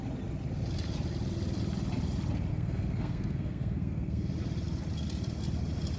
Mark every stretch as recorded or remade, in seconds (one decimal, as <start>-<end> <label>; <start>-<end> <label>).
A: 0.0-2.5 recorded; 2.5-4.3 remade; 4.3-6.0 recorded